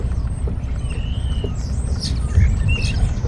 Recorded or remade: remade